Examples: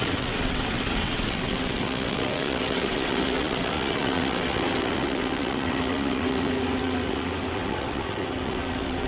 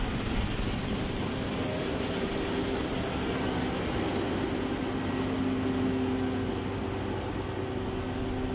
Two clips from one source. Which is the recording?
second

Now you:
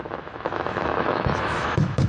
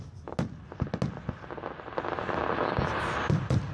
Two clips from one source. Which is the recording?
second